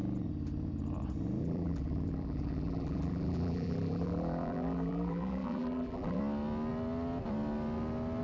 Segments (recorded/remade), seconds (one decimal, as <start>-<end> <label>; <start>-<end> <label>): 0.0-1.4 recorded; 1.4-6.2 remade; 6.2-8.2 recorded